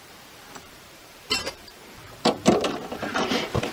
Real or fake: fake